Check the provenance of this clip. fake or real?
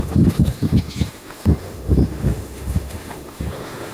fake